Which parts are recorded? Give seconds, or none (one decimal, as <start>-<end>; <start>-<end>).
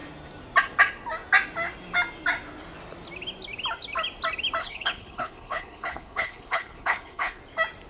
0.0-4.6; 7.4-7.9